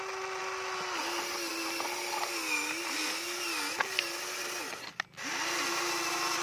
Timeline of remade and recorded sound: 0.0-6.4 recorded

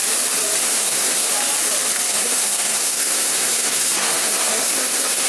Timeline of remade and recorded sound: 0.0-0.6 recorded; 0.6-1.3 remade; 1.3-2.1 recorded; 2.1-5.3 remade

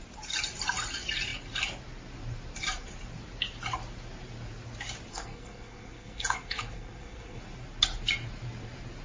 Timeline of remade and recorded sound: 0.0-5.1 recorded; 5.1-7.4 remade; 7.4-9.0 recorded

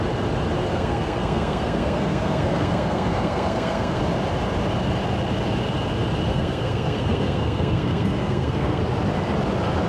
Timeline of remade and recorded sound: 0.0-0.7 recorded; 0.7-4.0 remade; 4.0-6.3 recorded; 6.3-8.8 remade; 8.8-9.9 recorded

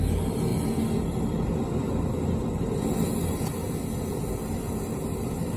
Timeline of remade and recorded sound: 0.0-5.6 recorded

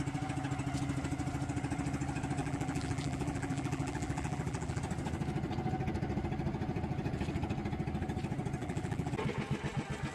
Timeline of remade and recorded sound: 0.0-2.4 recorded; 2.4-4.8 remade; 4.8-8.6 recorded; 8.6-9.1 remade; 9.1-10.1 recorded

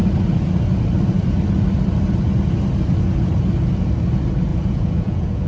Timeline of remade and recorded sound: 0.0-4.5 recorded; 4.5-5.5 remade